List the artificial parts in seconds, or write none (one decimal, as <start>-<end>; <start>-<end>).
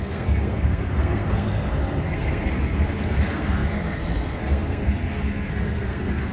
0.0-6.3